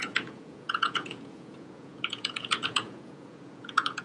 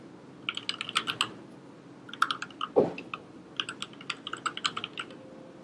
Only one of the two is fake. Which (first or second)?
first